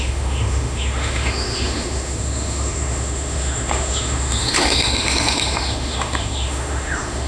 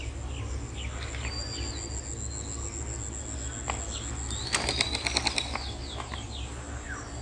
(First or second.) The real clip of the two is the second